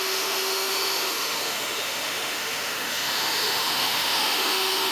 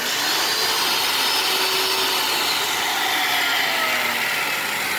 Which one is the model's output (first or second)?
first